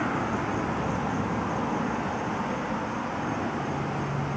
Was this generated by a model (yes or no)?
no